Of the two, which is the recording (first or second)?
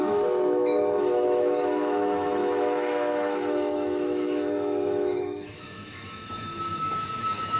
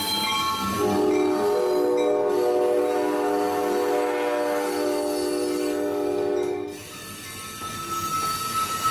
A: second